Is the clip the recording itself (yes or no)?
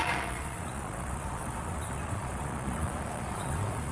no